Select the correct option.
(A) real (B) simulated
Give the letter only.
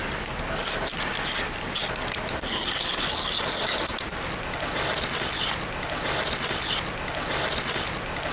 A